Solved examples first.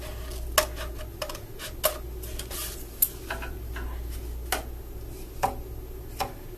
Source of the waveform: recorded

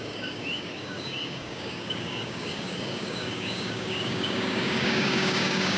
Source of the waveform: remade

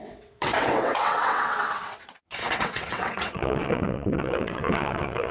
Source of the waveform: remade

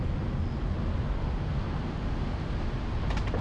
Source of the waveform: recorded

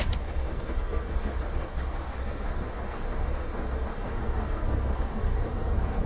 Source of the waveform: remade